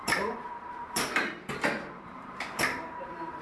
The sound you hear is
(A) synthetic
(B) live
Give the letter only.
A